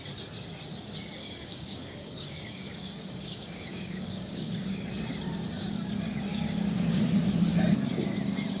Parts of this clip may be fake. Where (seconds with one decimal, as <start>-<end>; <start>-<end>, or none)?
1.2-4.9; 6.3-7.0

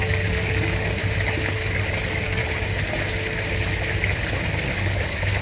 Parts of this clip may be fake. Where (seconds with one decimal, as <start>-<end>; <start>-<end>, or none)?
0.0-1.0; 1.5-2.4; 4.8-5.4

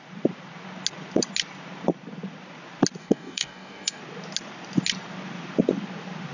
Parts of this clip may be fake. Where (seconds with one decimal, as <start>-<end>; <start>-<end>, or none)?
3.0-4.0

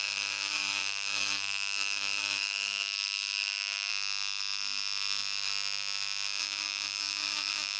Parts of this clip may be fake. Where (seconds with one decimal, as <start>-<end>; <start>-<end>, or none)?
0.0-7.8

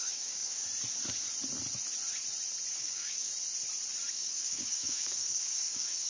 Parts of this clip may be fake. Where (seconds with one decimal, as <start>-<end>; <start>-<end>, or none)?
0.0-0.6; 2.7-3.3; 4.1-6.1

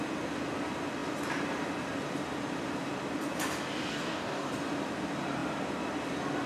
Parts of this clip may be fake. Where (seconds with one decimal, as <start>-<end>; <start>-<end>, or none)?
3.9-4.5

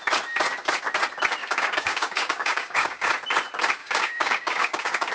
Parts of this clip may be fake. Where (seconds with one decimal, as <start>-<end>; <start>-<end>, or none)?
1.4-3.1; 3.8-5.1

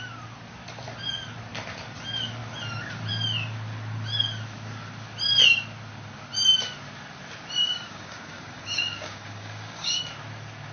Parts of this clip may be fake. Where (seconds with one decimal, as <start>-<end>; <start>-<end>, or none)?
7.6-10.0